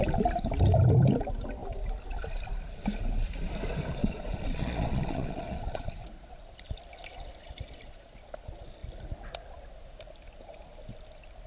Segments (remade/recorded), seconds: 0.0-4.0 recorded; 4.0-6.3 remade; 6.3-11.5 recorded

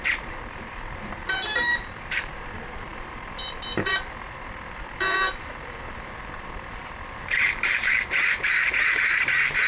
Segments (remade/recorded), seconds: 0.0-9.7 remade

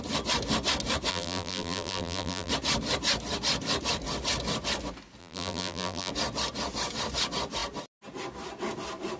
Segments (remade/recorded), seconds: 0.0-1.1 recorded; 1.1-2.5 remade; 2.5-5.2 recorded; 5.2-6.1 remade; 6.1-9.2 recorded

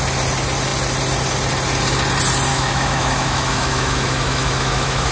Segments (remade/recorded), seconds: 0.0-2.5 recorded; 2.5-5.1 remade

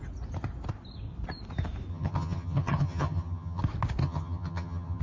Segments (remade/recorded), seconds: 0.0-1.9 recorded; 1.9-3.6 remade; 3.6-4.0 recorded; 4.0-5.0 remade

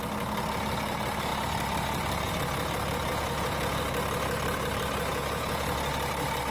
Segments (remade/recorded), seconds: 0.0-3.1 recorded; 3.1-3.8 remade; 3.8-5.1 recorded; 5.1-5.9 remade; 5.9-6.5 recorded